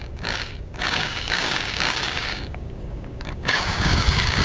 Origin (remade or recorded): remade